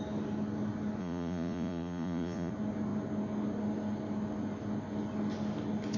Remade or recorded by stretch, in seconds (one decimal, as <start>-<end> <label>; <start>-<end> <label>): 0.0-1.0 recorded; 1.0-2.5 remade; 2.5-6.0 recorded